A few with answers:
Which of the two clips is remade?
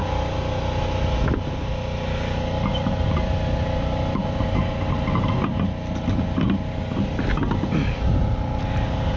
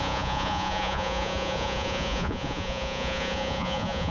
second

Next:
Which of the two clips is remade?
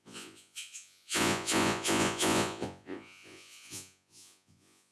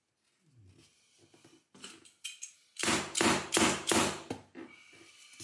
first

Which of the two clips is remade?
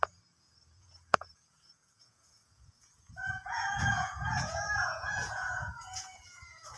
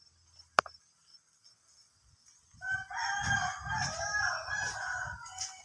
first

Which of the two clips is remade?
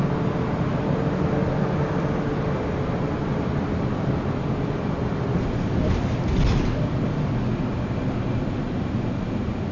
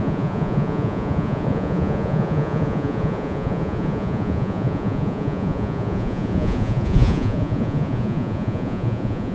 second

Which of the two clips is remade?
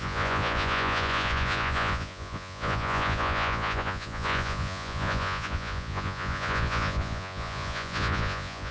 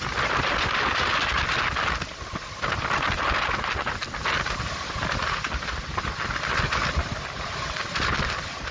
first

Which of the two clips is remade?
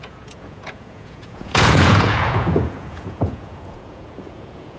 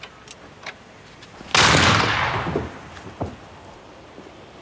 first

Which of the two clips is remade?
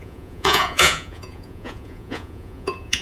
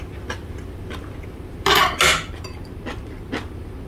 first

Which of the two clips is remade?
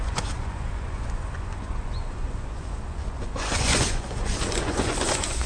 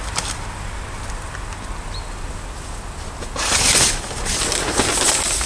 first